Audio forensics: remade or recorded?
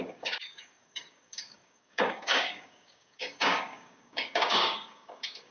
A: remade